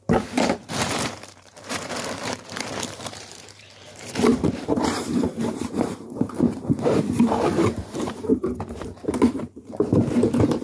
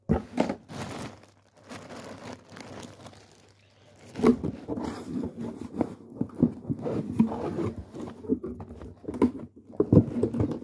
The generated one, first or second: first